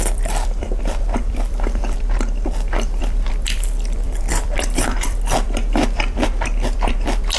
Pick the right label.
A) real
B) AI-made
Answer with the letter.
B